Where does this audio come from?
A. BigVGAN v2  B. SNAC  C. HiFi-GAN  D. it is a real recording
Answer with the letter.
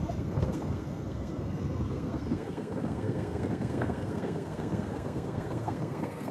B